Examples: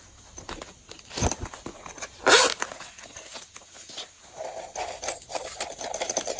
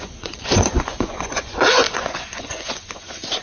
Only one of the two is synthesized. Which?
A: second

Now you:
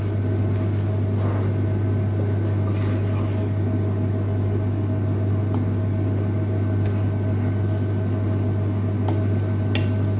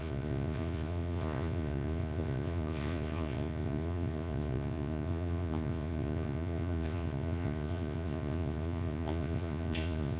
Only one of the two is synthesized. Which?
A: second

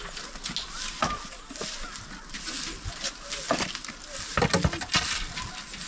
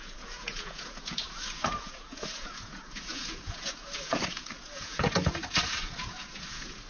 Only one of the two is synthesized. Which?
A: second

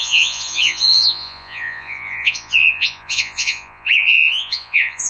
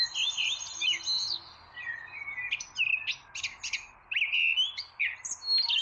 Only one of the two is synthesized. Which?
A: first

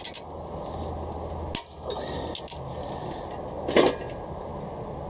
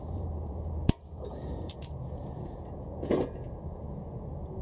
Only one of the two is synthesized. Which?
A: second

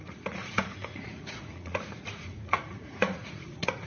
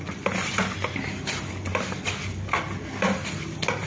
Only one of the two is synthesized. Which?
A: first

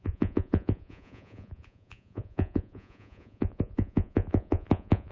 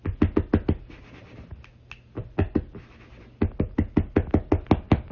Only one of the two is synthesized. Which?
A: first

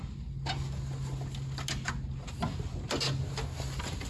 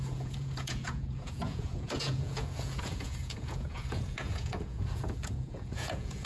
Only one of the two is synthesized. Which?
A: second